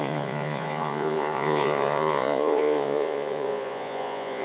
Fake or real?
fake